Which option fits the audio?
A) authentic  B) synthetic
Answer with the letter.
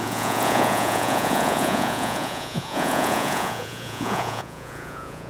B